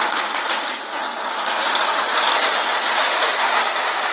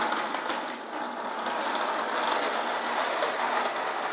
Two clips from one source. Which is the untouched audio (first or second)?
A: second